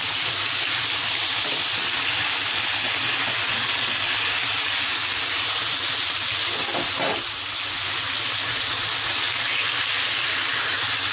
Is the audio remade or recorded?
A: recorded